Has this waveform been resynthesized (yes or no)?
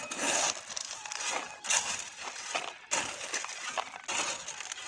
no